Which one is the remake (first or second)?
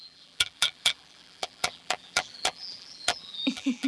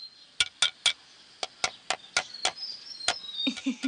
first